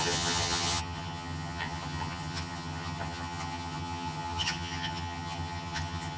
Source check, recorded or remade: remade